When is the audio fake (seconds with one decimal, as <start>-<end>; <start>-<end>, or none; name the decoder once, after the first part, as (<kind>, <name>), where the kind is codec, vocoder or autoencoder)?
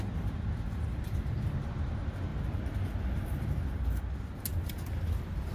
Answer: 0.9-1.5 (vocoder, BigVGAN v2); 2.3-3.6; 4.5-5.5